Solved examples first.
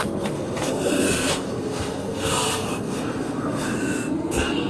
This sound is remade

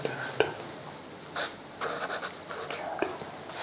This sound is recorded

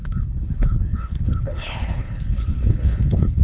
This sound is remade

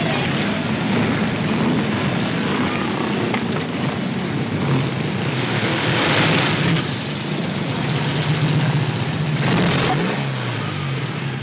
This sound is recorded